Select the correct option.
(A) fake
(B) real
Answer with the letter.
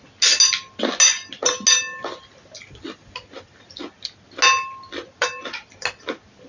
B